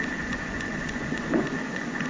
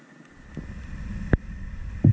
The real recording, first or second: second